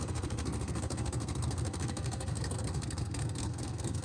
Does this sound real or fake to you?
fake